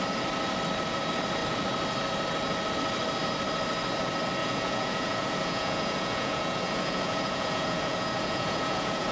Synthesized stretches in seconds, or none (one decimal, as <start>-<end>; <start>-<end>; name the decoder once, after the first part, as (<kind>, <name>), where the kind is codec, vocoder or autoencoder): 4.4-9.1 (vocoder, Vocos)